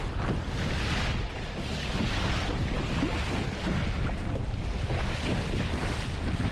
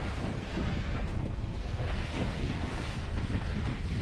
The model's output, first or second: second